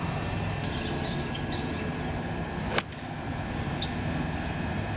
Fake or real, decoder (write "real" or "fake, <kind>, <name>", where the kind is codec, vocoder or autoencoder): real